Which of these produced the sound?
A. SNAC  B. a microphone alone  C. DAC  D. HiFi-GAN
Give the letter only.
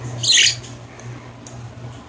B